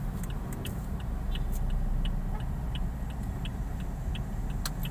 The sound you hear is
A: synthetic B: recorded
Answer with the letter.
B